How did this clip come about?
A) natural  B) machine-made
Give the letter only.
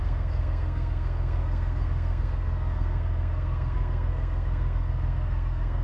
B